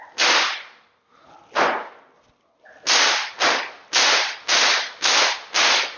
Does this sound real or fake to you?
real